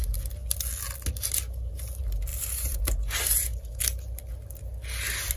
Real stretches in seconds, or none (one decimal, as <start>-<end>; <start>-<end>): 0.0-2.3; 3.8-5.4